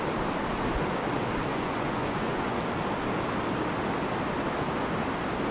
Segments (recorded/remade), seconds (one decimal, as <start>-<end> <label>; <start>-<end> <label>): 0.0-1.5 recorded; 1.5-2.6 remade; 2.6-5.5 recorded

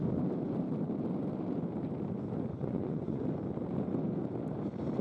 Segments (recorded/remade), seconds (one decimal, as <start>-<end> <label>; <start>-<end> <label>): 0.0-2.6 recorded; 2.6-3.2 remade; 3.2-5.0 recorded